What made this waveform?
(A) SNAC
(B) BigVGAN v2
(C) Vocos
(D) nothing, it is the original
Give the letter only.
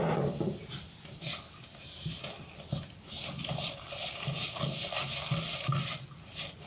D